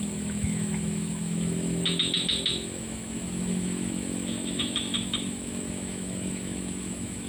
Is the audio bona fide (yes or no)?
no